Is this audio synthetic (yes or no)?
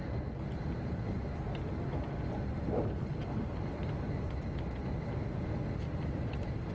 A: no